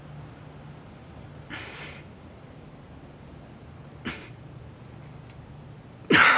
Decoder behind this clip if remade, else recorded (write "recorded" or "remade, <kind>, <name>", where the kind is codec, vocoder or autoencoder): recorded